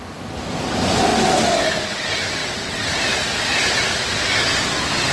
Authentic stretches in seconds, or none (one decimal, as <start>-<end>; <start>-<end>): 0.0-2.4; 3.0-5.1